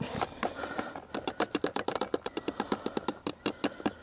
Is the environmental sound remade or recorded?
recorded